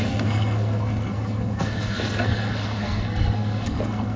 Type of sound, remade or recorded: remade